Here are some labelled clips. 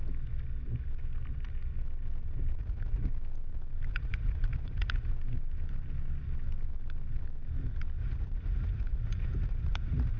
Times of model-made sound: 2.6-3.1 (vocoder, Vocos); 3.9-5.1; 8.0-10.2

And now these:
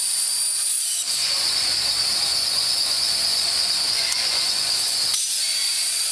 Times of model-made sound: 1.2-1.7 (vocoder, Vocos); 2.3-5.2

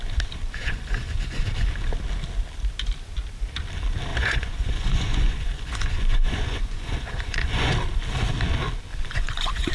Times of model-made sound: 0.6-1.4 (vocoder, Vocos); 4.1-7.7; 8.9-9.7

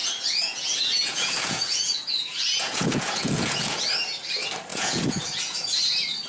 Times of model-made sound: 0.0-3.8 (vocoder, Vocos); 4.7-5.8

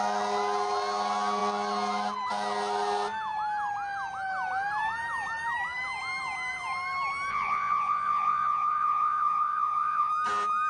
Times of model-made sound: 7.3-10.1 (vocoder, Vocos)

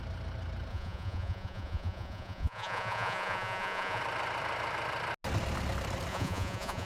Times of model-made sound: 0.7-4.0 (vocoder, Vocos); 6.1-6.9

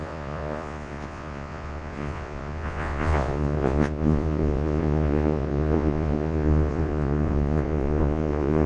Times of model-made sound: 0.0-8.7 (vocoder, Vocos)